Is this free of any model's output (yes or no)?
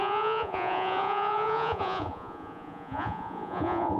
no